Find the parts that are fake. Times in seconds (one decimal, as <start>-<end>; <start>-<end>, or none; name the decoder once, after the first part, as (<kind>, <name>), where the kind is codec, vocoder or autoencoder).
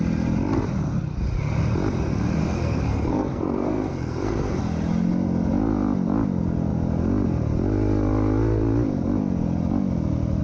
2.4-4.6 (codec, SNAC)